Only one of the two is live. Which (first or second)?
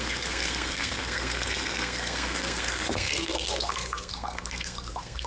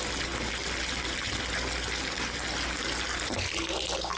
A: second